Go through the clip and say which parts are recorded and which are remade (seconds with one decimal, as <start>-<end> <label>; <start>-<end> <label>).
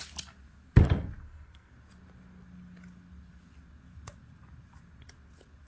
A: 0.0-1.2 recorded; 1.2-1.7 remade; 1.7-5.7 recorded